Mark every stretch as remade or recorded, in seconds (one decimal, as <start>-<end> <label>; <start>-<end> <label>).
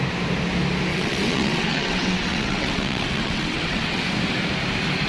0.0-0.9 recorded; 0.9-4.0 remade; 4.0-5.1 recorded